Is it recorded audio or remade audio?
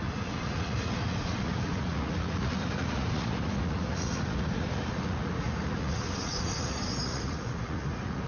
remade